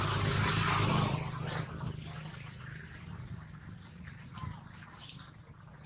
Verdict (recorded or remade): recorded